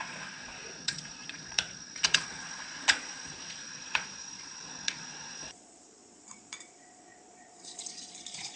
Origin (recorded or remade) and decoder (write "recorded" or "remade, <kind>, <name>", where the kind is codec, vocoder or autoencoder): remade, vocoder, Vocos